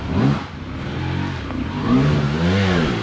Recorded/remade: recorded